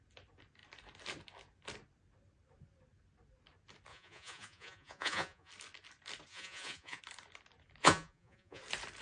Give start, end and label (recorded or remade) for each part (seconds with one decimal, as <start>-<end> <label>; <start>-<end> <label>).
0.0-3.9 recorded; 3.9-5.5 remade; 5.5-6.3 recorded; 6.3-7.0 remade; 7.0-7.8 recorded; 7.8-8.6 remade; 8.6-9.0 recorded